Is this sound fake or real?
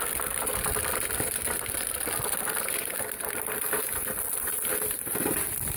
real